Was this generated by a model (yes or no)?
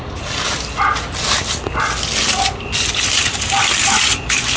no